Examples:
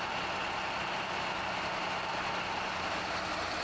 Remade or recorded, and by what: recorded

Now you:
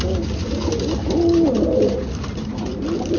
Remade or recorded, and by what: recorded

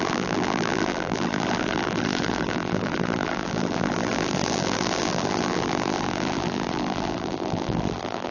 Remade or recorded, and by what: remade, vocoder, BigVGAN v2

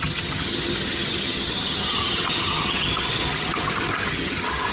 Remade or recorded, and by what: remade, vocoder, HiFi-GAN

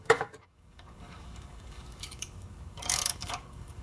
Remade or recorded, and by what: remade, codec, DAC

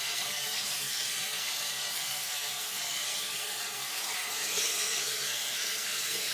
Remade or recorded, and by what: remade, codec, SNAC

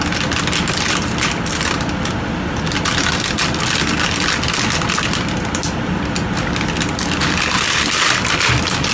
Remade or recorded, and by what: recorded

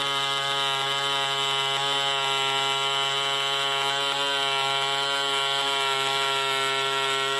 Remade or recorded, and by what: recorded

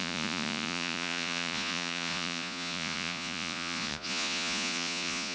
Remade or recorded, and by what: remade, vocoder, Vocos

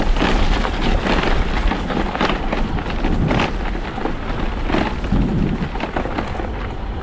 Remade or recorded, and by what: recorded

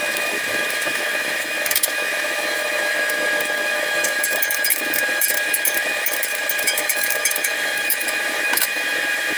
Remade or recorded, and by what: remade, autoencoder, DAC-VAE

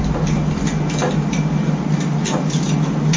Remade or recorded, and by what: recorded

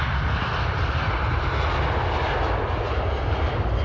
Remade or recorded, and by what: recorded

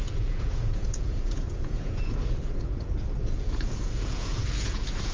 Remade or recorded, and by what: remade, vocoder, Vocos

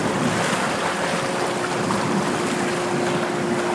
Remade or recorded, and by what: recorded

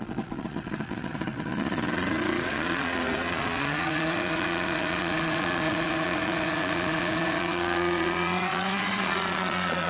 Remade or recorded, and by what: remade, vocoder, Vocos